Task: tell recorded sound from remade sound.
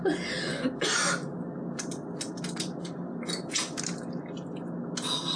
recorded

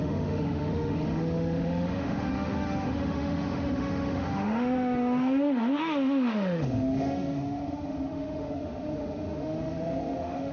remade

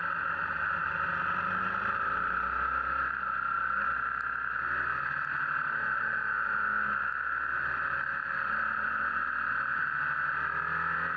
recorded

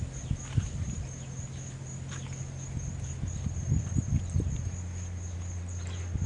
remade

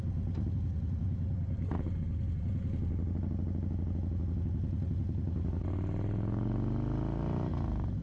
recorded